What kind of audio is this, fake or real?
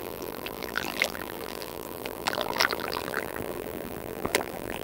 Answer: fake